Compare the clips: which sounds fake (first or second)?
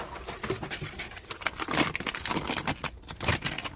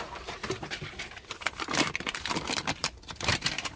second